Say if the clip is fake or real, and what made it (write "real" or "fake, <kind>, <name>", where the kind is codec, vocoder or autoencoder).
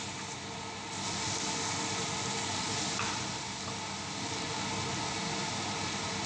real